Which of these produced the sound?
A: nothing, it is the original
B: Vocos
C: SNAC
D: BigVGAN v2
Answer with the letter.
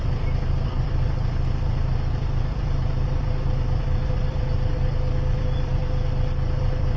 D